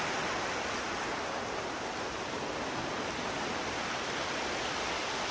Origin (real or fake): real